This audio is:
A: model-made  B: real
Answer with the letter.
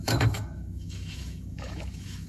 A